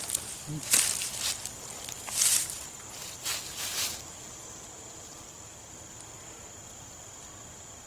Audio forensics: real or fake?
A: real